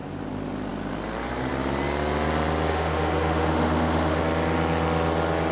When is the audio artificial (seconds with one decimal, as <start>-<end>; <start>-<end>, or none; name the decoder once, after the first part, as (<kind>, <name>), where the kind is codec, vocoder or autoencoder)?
2.7-4.2 (autoencoder, DAC-VAE)